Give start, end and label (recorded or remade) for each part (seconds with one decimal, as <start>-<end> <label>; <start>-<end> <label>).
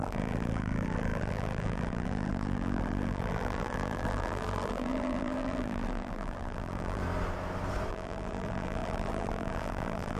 0.0-7.0 remade; 7.0-7.9 recorded; 7.9-10.2 remade